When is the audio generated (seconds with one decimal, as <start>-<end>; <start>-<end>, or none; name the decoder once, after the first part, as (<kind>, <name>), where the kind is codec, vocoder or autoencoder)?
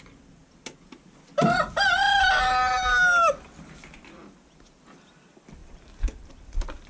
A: none